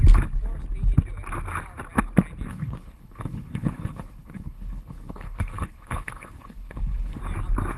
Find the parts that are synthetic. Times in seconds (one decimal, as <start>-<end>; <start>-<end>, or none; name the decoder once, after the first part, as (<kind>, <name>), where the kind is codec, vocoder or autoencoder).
2.5-7.2 (codec, HILCodec)